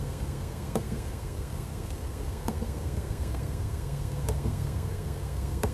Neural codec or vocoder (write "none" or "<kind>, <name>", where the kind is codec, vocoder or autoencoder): codec, SNAC